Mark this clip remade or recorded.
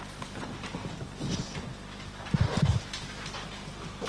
recorded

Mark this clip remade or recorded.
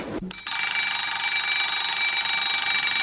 recorded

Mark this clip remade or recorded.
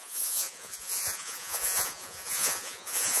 remade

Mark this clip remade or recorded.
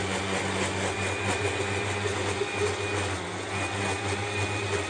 recorded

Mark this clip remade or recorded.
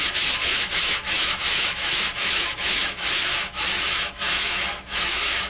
remade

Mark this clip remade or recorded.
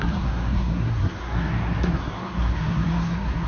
remade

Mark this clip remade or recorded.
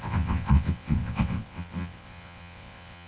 remade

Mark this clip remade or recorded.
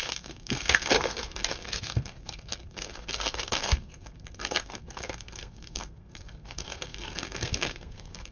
remade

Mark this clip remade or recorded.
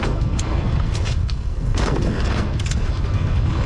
remade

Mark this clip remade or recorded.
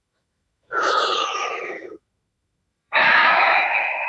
remade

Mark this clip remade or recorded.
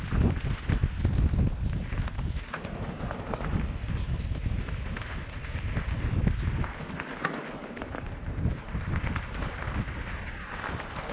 recorded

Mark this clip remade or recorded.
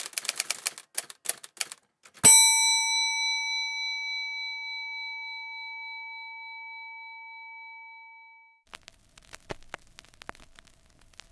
recorded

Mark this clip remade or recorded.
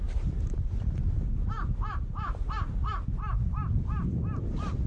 recorded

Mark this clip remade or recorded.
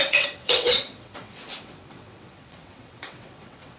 remade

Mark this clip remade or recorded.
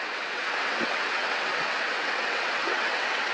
remade